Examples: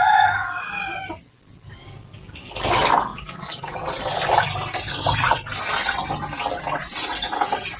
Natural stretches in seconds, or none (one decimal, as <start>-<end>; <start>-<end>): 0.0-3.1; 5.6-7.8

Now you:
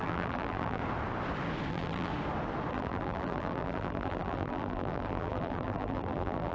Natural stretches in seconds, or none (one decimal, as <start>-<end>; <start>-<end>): 0.8-1.7; 2.1-2.7

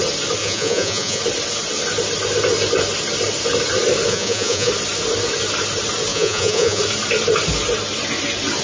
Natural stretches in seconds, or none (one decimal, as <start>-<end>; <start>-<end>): 0.0-0.4; 1.2-4.1; 4.7-6.1; 6.8-8.6